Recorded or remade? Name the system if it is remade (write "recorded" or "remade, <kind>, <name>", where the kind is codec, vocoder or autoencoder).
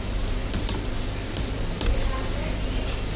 recorded